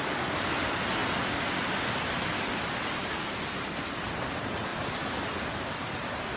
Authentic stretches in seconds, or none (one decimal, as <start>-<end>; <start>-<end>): 1.0-3.8